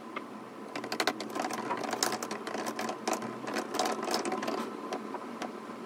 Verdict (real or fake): real